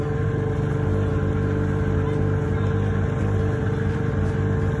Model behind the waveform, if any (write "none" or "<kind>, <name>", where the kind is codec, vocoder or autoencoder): none